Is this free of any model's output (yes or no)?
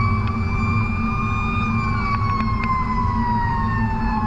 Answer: yes